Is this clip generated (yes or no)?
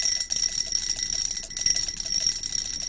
no